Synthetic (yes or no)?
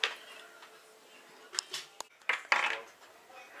no